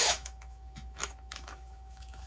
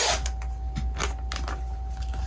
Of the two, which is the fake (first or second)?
first